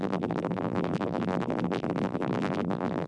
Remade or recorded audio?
remade